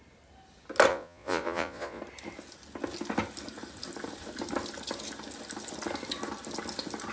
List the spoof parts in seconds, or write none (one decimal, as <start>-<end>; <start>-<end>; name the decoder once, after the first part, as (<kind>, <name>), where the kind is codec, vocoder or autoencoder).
0.9-2.0 (vocoder, Vocos)